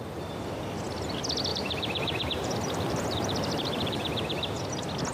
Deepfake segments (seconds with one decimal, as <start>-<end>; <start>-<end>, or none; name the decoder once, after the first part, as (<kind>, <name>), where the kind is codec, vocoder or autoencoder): 1.5-4.6 (vocoder, BigVGAN v2)